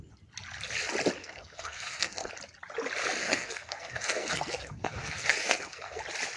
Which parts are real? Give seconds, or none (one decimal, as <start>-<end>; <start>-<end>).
0.0-1.2; 2.3-3.2; 6.0-6.4